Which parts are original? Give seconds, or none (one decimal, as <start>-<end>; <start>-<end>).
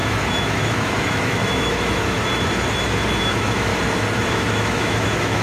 2.2-3.2; 3.7-4.3